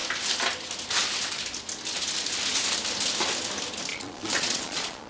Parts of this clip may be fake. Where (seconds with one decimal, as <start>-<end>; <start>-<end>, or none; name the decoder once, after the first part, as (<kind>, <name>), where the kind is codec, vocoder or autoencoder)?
3.9-5.1 (vocoder, Vocos)